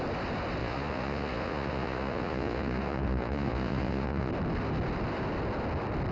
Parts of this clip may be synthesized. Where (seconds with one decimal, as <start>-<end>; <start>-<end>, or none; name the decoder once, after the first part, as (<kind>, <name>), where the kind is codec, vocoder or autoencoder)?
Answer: 0.6-4.3 (vocoder, Vocos)